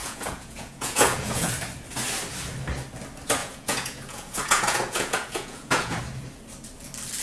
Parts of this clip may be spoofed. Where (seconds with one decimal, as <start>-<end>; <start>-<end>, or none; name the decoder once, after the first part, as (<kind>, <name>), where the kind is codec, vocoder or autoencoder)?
0.0-1.5 (vocoder, Vocos); 3.4-6.0